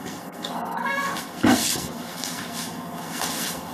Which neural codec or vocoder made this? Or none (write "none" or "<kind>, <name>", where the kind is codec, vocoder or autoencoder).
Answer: codec, SNAC